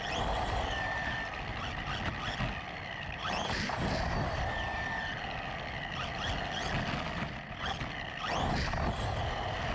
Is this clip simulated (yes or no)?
no